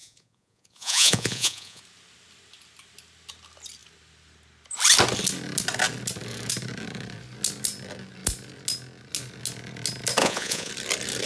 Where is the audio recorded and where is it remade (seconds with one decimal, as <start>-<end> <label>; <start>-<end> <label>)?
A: 0.0-1.8 remade; 1.8-10.2 recorded; 10.2-10.7 remade; 10.7-11.3 recorded